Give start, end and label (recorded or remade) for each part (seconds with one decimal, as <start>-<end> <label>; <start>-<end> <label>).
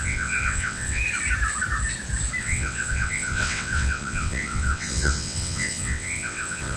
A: 0.0-1.0 remade; 1.0-2.4 recorded; 2.4-6.8 remade